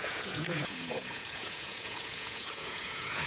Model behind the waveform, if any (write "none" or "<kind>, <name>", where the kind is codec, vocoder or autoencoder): vocoder, Vocos